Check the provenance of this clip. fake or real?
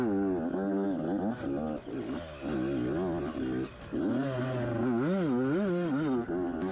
real